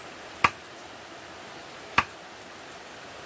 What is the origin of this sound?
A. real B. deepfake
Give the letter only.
A